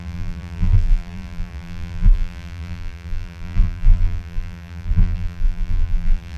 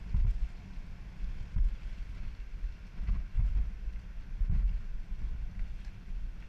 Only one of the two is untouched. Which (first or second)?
second